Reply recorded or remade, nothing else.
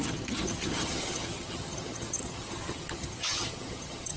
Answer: remade